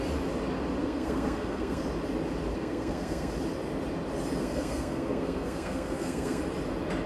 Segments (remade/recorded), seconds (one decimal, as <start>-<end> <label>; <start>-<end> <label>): 0.0-0.8 recorded; 0.8-1.8 remade; 1.8-2.5 recorded; 2.5-3.3 remade; 3.3-4.4 recorded; 4.4-6.4 remade; 6.4-7.1 recorded